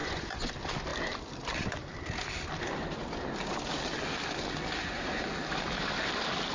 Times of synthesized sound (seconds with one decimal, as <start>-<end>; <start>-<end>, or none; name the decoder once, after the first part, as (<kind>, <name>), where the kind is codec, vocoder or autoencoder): 0.0-0.5 (vocoder, Vocos)